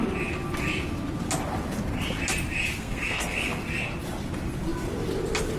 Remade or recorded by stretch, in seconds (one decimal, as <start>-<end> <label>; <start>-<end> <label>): 0.0-2.8 recorded; 2.8-3.6 remade; 3.6-5.6 recorded